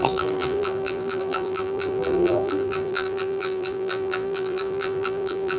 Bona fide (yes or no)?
no